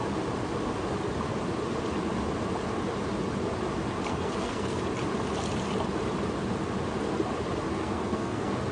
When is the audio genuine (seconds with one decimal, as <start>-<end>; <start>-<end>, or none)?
0.0-4.1; 4.8-7.7